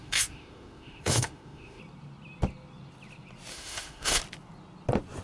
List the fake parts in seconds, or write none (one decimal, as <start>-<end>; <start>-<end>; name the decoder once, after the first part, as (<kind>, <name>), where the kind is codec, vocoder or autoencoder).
0.0-1.8 (autoencoder, DAC-VAE); 3.5-4.2